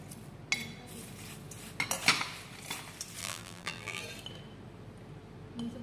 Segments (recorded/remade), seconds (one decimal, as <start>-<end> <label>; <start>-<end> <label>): 0.0-3.2 recorded; 3.2-4.0 remade; 4.0-5.8 recorded